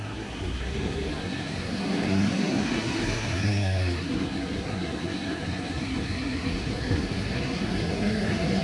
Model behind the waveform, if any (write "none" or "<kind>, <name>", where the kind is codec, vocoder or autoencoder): codec, SNAC